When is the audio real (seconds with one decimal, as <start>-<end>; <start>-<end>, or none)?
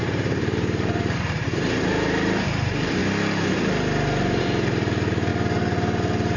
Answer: 3.0-4.4; 5.3-6.4